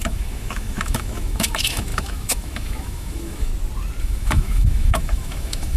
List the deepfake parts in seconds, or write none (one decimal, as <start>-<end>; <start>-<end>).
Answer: 0.0-3.5; 4.0-5.8